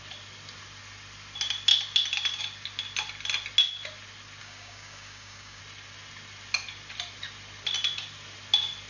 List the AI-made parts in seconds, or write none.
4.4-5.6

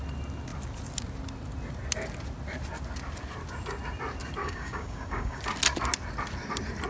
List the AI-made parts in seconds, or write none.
4.4-5.4